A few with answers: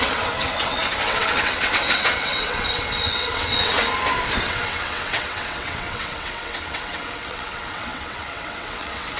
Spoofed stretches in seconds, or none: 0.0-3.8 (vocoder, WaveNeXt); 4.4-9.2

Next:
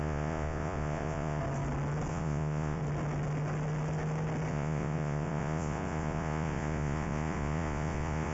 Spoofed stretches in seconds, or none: 0.0-1.4 (vocoder, Vocos); 2.1-2.8; 4.5-8.3

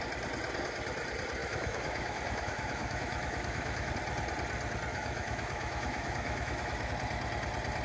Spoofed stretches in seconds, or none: 1.4-3.9 (autoencoder, DAC-VAE); 4.9-6.9

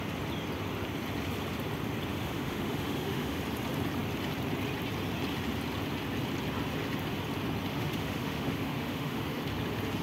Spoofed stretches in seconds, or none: 2.1-3.4 (autoencoder, DAC-VAE); 7.7-9.4